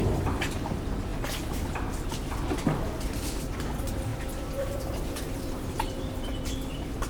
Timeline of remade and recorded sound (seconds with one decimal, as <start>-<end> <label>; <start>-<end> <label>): 0.0-1.1 remade; 1.1-3.5 recorded; 3.5-6.3 remade; 6.3-7.1 recorded